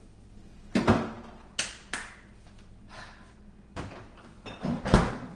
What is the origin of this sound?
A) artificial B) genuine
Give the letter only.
B